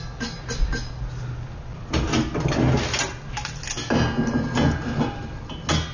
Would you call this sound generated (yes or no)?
no